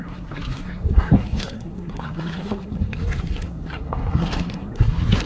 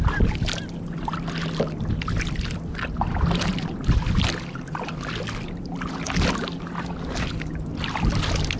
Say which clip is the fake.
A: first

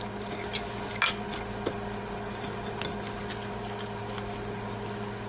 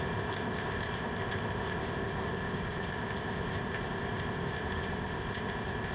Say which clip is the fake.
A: second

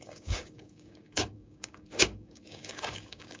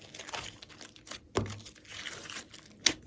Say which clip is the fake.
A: first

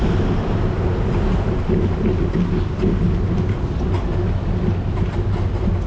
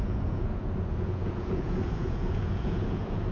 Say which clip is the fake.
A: second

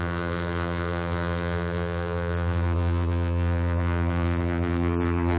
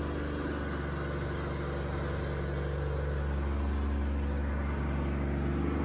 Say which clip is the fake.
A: first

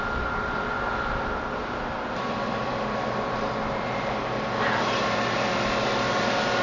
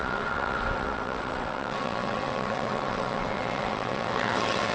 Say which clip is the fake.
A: second